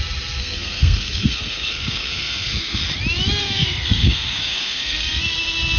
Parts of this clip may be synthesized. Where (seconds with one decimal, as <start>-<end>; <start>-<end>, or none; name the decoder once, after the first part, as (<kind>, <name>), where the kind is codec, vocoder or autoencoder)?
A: 0.4-2.8 (codec, SNAC); 3.4-5.2